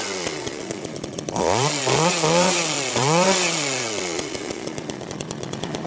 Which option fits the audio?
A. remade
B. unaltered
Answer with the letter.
A